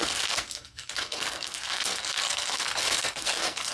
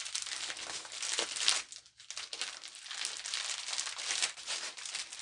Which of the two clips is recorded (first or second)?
second